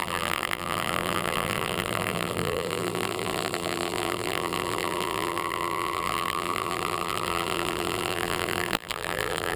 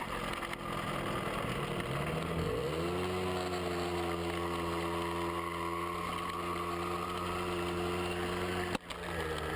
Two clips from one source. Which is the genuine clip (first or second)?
second